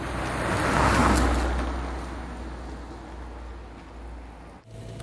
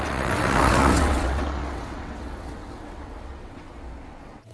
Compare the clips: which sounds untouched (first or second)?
first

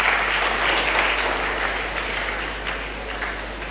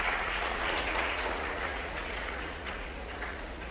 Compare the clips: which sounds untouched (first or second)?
first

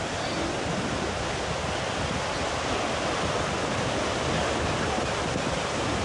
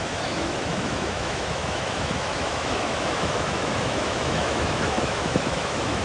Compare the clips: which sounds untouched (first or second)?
first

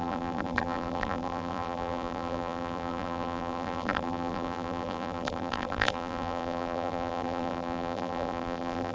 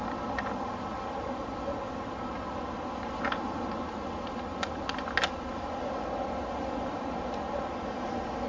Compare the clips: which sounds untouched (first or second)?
second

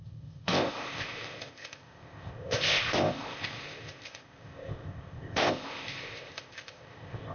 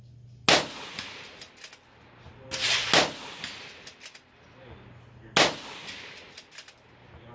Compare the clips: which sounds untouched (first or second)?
second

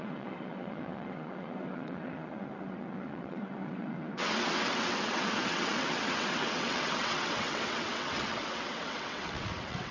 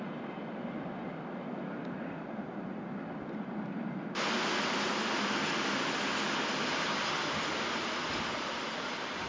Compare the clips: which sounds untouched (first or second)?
second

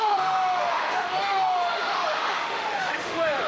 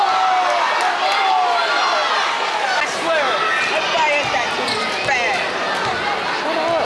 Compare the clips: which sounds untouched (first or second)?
second